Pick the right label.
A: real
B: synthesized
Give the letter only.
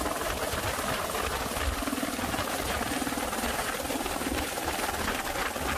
A